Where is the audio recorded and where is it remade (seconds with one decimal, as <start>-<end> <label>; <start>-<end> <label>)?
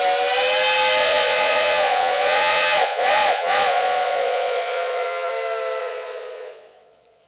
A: 0.0-1.0 recorded; 1.0-5.3 remade; 5.3-5.8 recorded; 5.8-7.3 remade